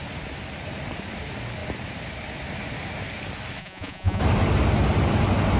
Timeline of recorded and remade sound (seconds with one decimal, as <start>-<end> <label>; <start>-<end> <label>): 0.0-3.6 recorded; 3.6-4.2 remade; 4.2-5.6 recorded